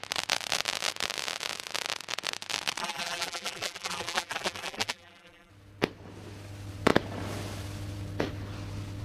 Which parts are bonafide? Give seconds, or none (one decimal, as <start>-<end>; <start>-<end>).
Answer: 0.0-2.8; 5.5-9.0